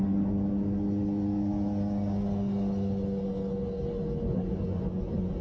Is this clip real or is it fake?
real